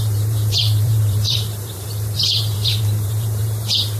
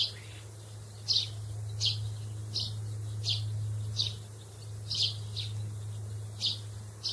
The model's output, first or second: first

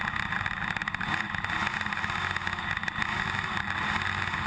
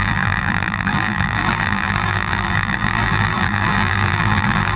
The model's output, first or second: second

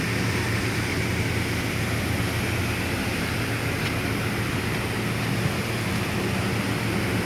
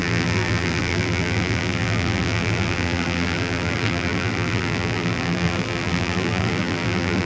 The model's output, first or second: second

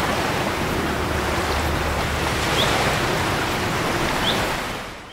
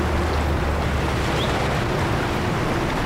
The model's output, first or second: first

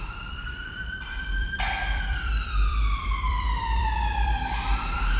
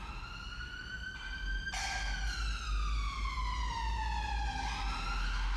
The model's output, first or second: first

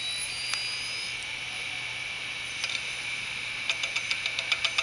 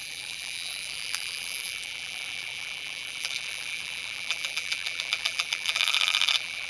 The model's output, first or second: second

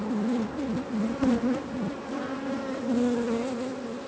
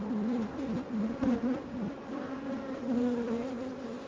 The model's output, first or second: second